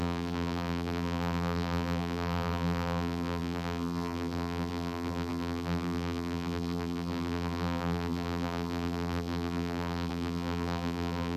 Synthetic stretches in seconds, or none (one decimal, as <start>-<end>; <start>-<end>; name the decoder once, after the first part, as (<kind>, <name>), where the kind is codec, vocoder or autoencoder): 0.0-11.4 (vocoder, BigVGAN v2)